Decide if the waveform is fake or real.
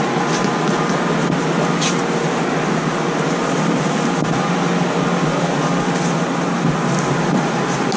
real